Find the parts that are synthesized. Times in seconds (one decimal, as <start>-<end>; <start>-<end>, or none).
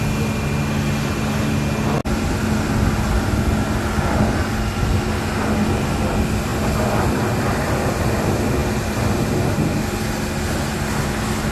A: none